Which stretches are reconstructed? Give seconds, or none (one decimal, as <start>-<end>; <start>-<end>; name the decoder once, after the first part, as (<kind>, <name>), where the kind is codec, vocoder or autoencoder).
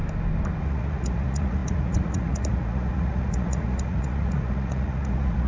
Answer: 0.6-5.5 (vocoder, Vocos)